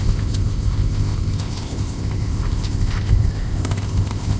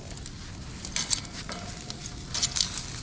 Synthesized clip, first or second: first